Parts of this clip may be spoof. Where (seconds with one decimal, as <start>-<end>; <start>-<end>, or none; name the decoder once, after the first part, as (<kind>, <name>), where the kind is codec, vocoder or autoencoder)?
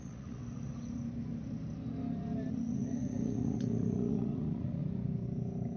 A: 0.0-0.4 (vocoder, Vocos); 2.5-4.8